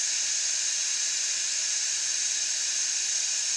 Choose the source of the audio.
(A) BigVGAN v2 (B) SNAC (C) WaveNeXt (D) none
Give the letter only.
D